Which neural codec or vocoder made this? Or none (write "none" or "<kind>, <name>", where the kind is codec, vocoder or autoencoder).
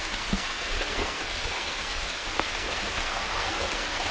codec, SNAC